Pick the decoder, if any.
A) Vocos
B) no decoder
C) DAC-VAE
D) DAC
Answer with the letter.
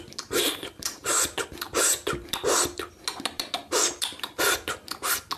B